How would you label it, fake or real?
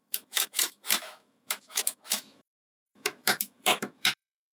fake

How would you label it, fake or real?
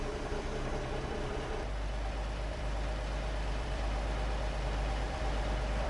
fake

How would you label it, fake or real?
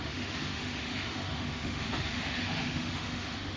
fake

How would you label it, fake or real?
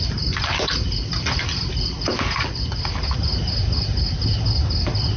real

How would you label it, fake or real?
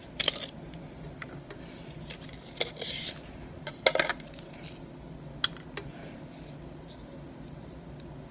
real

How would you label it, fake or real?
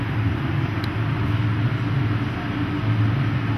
real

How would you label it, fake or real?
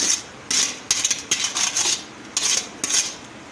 real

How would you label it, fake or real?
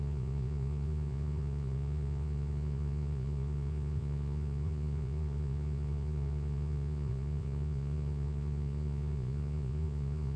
fake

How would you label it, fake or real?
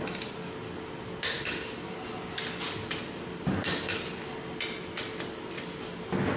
real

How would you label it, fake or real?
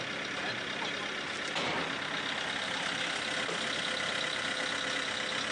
real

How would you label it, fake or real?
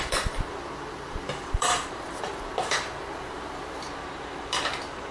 fake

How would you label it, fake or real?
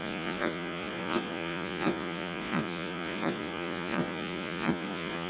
fake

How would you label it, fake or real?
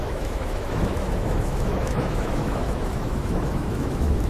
fake